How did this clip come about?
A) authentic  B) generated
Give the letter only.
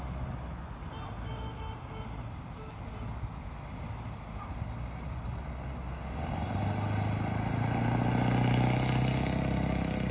A